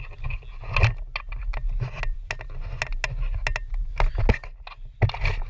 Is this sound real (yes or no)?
yes